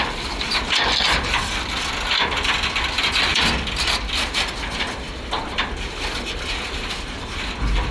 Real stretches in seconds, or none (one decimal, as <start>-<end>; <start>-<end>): 0.0-7.9